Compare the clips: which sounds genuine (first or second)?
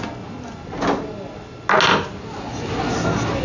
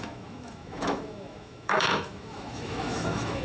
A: first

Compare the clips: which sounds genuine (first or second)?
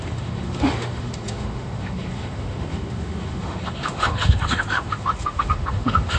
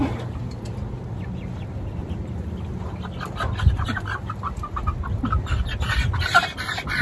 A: second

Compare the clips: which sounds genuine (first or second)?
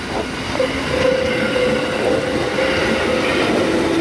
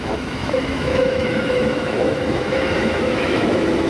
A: first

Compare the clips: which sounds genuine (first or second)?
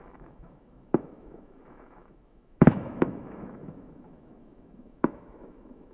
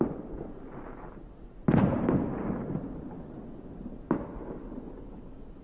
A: second